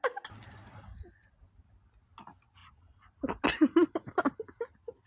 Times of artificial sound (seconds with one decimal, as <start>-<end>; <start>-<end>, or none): none